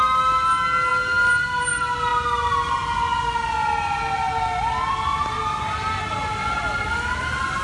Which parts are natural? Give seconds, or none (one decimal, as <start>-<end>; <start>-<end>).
0.0-6.2; 6.9-7.6